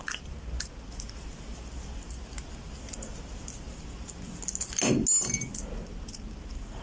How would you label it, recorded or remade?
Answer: recorded